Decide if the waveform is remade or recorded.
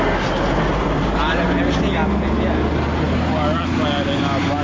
recorded